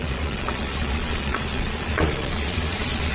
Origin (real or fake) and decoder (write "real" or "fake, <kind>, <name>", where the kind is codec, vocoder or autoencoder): fake, vocoder, Vocos